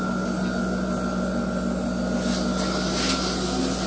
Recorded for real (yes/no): yes